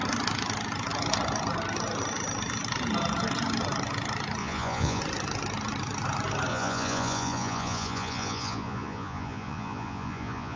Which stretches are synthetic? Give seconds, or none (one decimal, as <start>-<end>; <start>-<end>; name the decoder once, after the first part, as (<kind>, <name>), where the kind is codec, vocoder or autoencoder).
4.4-5.0 (vocoder, Vocos); 6.5-10.6